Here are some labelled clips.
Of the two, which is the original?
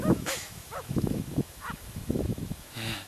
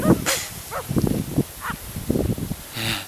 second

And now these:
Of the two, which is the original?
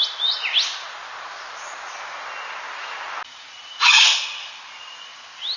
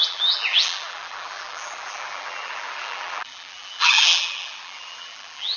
first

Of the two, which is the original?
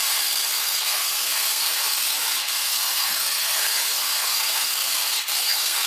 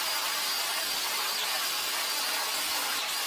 second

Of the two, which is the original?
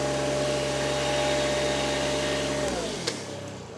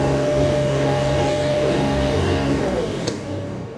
first